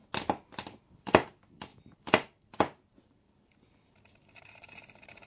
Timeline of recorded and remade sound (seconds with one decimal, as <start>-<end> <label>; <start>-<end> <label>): 0.0-0.8 recorded; 0.8-5.3 remade